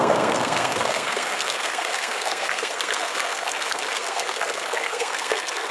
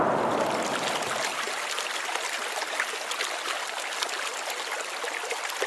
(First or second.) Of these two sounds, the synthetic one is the first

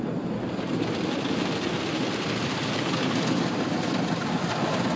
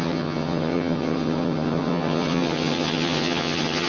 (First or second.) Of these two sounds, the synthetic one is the second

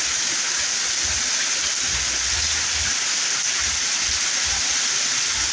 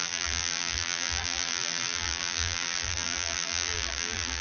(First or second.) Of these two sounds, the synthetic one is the second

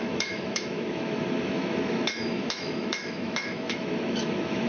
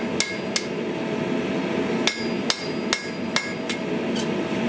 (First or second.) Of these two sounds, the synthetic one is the first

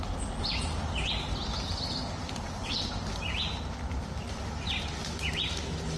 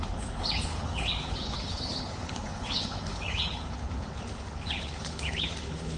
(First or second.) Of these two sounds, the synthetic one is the second